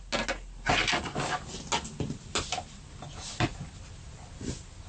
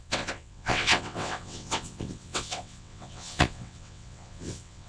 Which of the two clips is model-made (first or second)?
second